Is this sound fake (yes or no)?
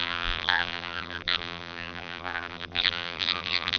yes